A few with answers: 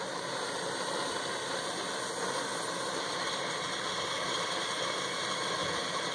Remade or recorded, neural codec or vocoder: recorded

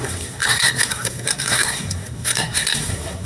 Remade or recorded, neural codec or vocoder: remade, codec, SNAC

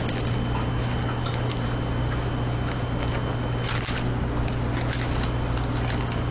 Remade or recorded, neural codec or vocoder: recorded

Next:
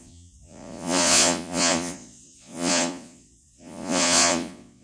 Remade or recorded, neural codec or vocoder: remade, vocoder, Vocos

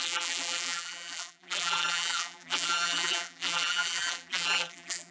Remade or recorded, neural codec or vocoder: remade, vocoder, BigVGAN v2